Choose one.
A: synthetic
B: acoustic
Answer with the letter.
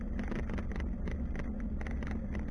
B